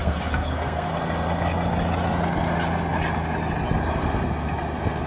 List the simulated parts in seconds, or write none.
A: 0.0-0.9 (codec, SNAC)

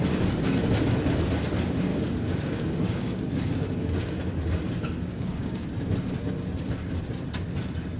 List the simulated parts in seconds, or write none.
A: 1.9-4.2 (codec, DAC); 5.1-5.7

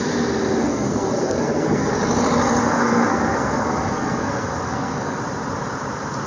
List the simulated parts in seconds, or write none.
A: 0.6-1.9 (codec, SNAC); 2.6-5.2

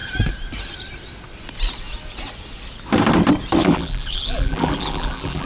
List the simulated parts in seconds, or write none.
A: 3.6-5.5 (vocoder, BigVGAN v2)

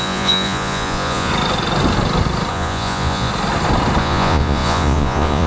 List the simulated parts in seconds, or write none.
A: 0.0-1.3 (vocoder, Vocos); 2.5-3.3; 4.0-5.5

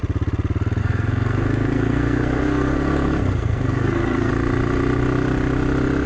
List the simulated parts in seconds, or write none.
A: 0.8-4.3 (codec, SNAC)

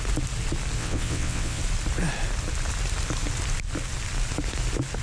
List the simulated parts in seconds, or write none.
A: 0.8-1.6 (vocoder, WaveNeXt)